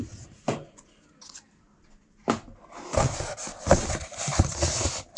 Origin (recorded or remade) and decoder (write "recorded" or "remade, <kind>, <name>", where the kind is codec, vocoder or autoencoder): recorded